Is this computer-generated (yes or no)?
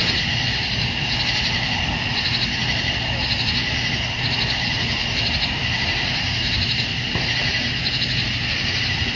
no